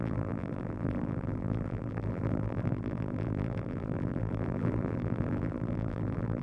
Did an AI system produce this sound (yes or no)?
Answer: yes